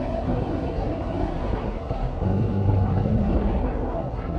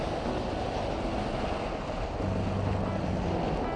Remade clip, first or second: first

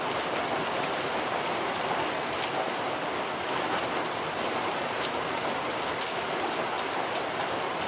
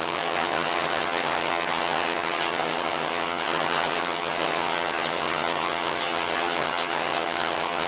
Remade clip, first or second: second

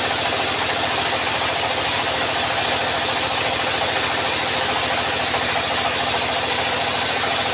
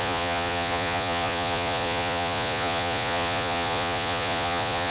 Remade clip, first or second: second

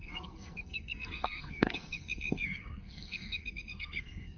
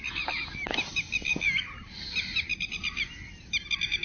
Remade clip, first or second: first